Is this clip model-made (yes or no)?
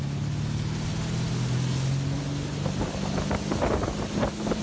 no